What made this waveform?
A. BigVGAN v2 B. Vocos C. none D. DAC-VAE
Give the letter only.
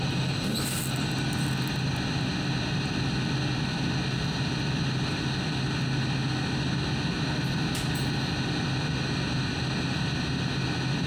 C